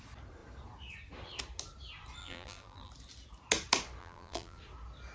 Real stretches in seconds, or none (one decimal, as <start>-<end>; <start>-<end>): 0.0-2.2; 2.9-4.0; 4.6-5.1